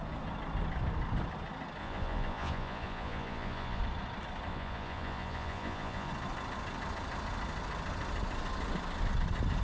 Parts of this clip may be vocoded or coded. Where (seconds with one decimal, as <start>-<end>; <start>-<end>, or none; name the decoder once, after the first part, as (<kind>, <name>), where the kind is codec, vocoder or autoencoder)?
1.8-3.8 (vocoder, Vocos); 4.5-6.1